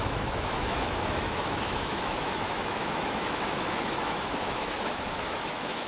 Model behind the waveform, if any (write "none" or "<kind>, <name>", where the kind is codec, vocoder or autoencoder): autoencoder, DAC-VAE